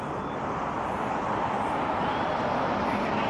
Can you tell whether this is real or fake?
fake